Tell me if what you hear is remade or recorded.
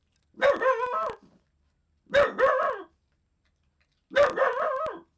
recorded